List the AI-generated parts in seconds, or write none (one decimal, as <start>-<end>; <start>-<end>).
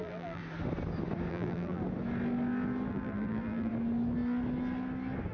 0.0-0.4; 1.3-1.8; 2.9-3.7